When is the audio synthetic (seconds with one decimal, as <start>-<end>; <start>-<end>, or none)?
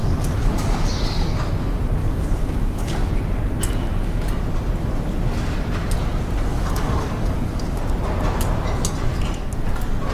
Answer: 0.0-1.5; 2.0-3.1; 6.5-7.8